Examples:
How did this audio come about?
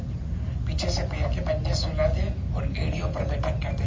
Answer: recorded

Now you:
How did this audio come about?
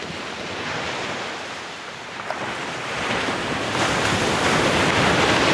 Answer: recorded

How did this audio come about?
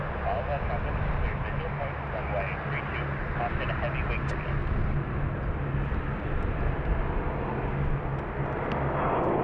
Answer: recorded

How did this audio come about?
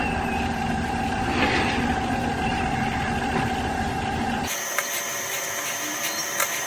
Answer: recorded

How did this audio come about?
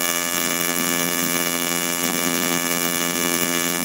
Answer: remade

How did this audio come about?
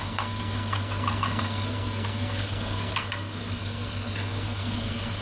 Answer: remade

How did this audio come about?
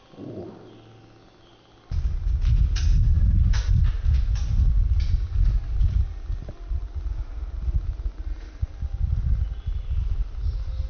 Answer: recorded